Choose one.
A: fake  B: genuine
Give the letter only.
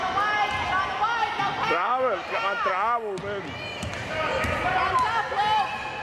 B